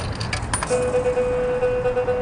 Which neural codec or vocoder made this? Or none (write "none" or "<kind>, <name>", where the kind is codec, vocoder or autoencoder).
none